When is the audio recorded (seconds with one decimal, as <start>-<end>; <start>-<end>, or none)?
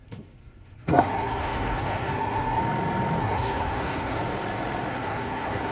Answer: 2.6-3.2; 4.2-4.9